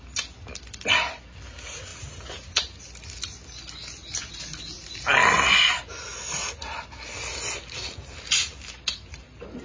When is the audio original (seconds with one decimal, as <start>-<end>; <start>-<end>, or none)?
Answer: 0.0-1.9; 2.8-9.6